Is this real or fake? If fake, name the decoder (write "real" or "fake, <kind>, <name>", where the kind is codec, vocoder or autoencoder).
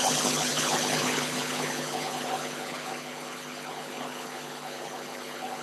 fake, codec, HILCodec